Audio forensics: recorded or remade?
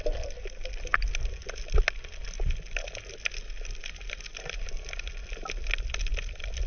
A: recorded